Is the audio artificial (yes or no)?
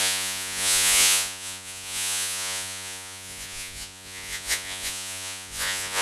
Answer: yes